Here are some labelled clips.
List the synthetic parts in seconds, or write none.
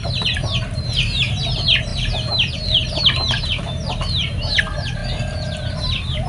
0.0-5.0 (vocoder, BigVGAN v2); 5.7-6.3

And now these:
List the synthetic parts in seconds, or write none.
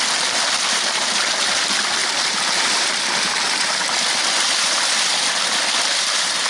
2.0-3.7 (vocoder, BigVGAN v2)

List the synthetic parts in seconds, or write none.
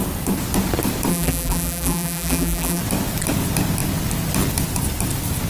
1.1-2.8 (vocoder, BigVGAN v2)